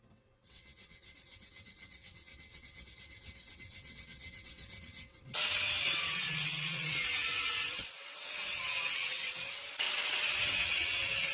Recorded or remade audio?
remade